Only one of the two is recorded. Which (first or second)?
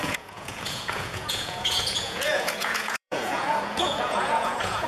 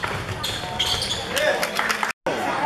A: second